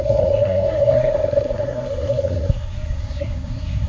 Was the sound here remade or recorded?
remade